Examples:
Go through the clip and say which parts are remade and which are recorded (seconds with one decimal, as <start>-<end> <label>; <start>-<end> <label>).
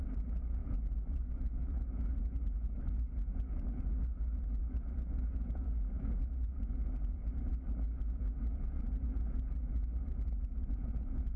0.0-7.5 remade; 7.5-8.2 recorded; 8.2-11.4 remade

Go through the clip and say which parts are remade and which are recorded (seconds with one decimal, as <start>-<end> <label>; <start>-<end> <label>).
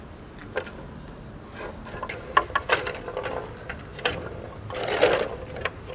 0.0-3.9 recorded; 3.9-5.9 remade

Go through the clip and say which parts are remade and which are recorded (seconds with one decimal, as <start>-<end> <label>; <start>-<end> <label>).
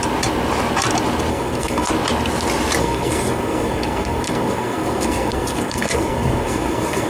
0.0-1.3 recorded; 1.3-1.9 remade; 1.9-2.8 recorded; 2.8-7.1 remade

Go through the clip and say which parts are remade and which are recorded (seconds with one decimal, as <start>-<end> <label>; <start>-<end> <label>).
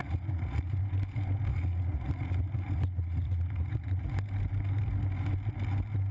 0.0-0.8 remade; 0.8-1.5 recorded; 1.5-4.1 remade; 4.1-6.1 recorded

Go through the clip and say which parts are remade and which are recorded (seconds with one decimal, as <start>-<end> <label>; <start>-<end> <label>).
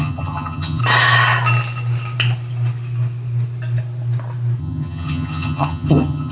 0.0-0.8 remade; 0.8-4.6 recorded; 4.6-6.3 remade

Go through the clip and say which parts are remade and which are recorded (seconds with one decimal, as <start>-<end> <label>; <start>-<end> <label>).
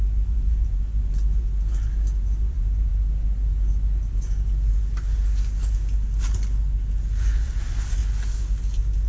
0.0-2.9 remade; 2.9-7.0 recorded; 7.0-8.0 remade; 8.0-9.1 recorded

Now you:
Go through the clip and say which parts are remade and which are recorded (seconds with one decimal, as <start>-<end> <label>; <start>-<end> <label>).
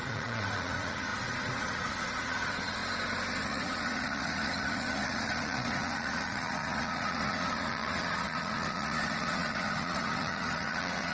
0.0-2.8 remade; 2.8-3.3 recorded; 3.3-11.1 remade